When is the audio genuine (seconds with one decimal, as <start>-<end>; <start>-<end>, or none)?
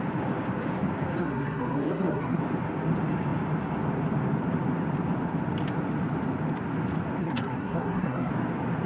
0.0-1.2; 2.4-7.2; 8.3-8.9